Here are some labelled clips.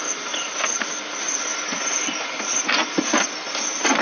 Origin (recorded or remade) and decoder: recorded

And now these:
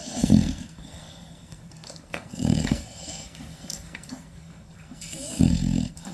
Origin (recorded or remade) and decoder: remade, codec, SNAC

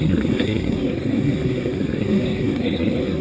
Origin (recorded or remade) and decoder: remade, codec, SNAC